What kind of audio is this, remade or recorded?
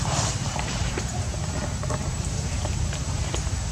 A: remade